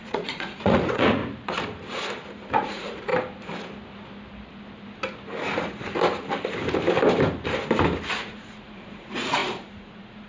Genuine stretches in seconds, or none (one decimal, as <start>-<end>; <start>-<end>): 1.2-2.5; 3.1-8.1